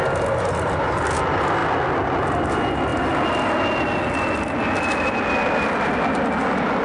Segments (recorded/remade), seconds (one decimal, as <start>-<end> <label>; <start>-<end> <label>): 0.0-6.8 recorded